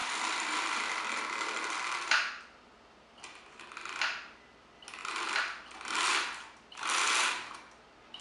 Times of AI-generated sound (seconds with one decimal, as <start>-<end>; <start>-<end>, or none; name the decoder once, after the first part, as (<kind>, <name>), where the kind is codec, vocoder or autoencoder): 0.0-1.2 (vocoder, BigVGAN v2)